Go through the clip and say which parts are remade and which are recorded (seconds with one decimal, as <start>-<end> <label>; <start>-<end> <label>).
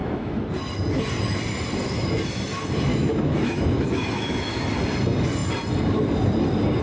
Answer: 0.0-0.6 remade; 0.6-2.9 recorded; 2.9-4.5 remade; 4.5-6.8 recorded